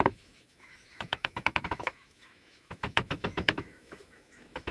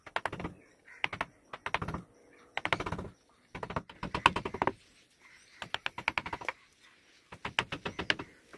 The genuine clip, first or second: second